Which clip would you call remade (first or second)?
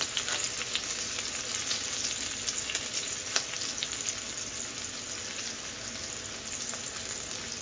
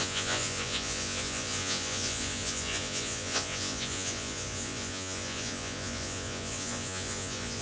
second